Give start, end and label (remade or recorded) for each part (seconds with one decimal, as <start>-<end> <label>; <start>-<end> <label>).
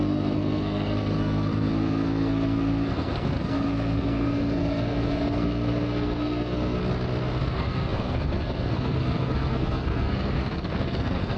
0.0-6.8 remade; 6.8-7.4 recorded; 7.4-11.4 remade